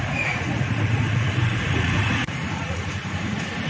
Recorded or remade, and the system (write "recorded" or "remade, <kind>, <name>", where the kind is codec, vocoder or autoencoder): remade, vocoder, Vocos